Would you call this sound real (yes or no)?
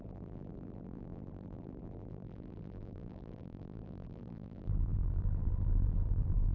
no